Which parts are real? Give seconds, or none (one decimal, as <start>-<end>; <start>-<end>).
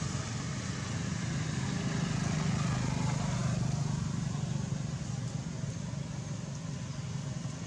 0.0-7.7